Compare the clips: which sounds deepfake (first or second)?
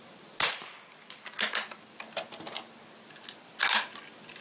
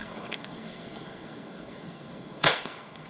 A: second